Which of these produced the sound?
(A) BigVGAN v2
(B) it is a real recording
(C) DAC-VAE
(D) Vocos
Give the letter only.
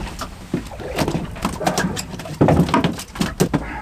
B